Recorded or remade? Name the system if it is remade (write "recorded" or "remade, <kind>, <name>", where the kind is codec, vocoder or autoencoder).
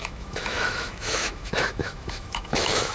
remade, autoencoder, DAC-VAE